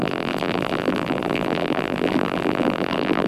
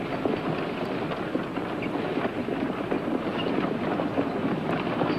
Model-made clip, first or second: first